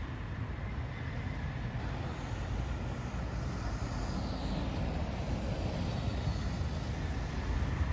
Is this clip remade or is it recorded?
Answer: recorded